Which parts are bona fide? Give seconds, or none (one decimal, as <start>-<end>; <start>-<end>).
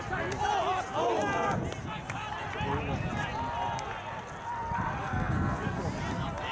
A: 0.0-5.0; 5.8-6.5